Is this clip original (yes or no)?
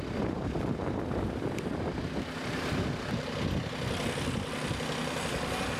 yes